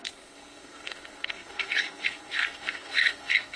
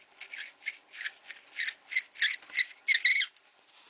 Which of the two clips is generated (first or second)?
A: first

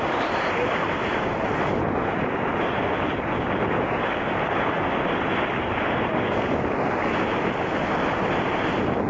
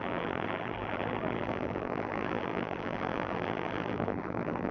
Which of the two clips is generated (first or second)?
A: second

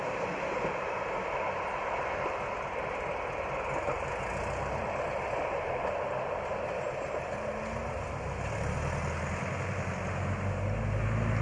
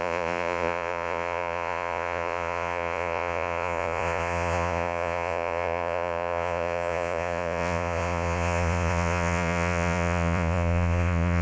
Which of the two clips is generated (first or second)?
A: second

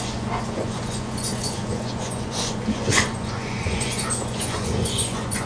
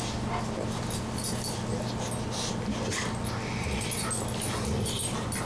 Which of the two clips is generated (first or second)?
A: first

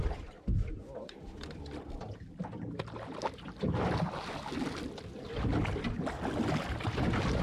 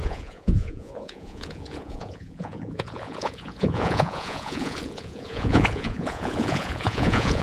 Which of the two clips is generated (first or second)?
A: second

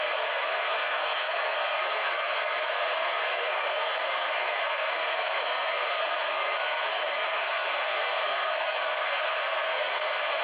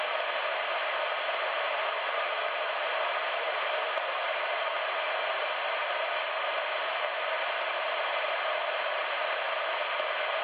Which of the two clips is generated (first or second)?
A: first